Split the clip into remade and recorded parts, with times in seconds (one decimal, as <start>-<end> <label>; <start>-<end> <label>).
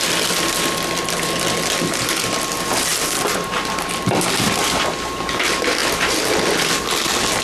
0.0-7.4 recorded